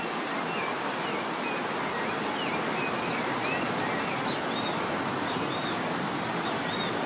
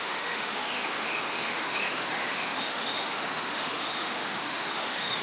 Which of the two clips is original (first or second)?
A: first